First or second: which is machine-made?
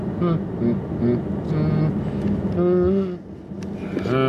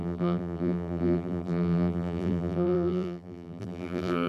second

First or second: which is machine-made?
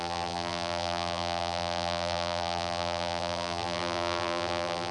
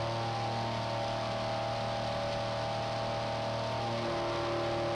first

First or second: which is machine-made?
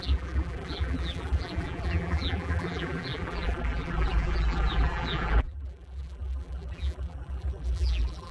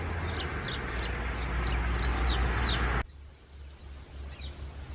first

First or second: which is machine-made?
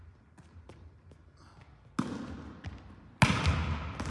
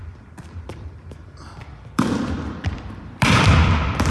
second